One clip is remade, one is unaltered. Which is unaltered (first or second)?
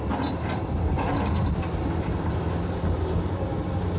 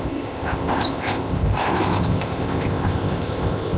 first